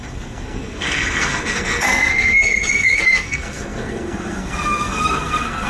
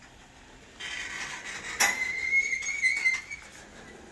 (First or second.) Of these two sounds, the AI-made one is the first